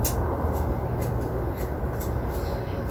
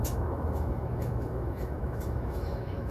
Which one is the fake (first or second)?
second